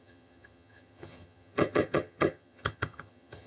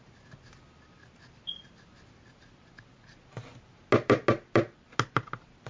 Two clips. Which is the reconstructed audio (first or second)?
first